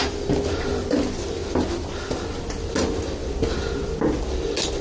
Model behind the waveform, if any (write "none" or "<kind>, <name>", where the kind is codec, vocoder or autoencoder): none